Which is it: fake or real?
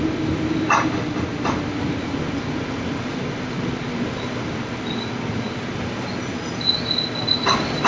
real